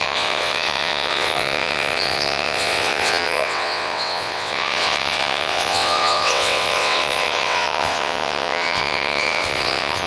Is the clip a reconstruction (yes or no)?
yes